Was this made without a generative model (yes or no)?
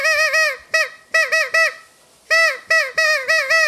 yes